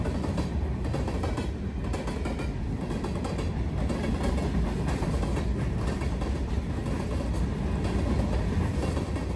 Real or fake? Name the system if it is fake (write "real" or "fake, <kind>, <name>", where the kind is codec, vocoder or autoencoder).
real